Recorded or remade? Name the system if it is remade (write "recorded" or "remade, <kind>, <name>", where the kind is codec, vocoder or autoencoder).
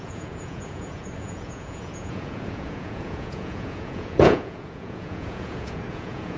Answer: remade, vocoder, Vocos